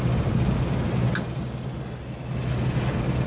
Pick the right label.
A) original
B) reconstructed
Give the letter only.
A